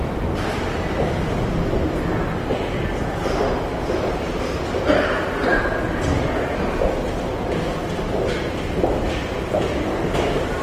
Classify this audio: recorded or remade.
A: recorded